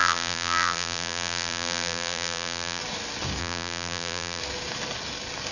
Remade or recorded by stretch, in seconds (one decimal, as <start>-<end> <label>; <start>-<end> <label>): 0.0-2.8 remade; 2.8-3.4 recorded; 3.4-4.4 remade; 4.4-5.5 recorded